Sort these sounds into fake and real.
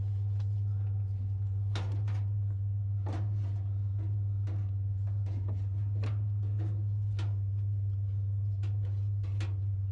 real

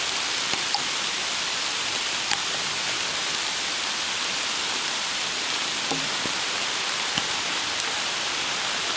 fake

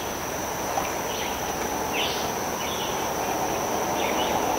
real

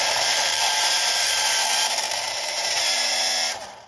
fake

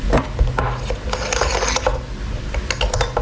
real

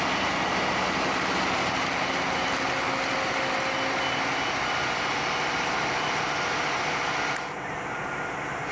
real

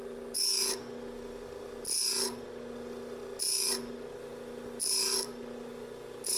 real